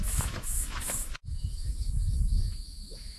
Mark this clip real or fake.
fake